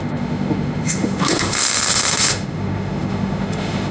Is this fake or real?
fake